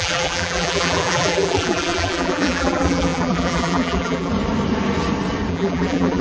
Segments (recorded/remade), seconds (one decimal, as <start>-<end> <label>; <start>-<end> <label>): 0.0-4.3 remade; 4.3-5.5 recorded; 5.5-6.2 remade

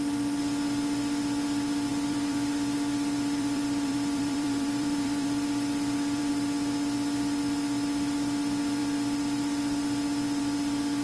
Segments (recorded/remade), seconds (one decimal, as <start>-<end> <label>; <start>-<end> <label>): 0.0-1.9 recorded; 1.9-6.3 remade; 6.3-11.0 recorded

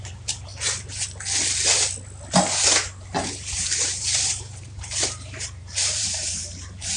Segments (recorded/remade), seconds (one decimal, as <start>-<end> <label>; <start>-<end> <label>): 0.0-0.5 remade; 0.5-3.6 recorded; 3.6-7.0 remade